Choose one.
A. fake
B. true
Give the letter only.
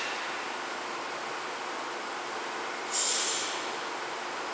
B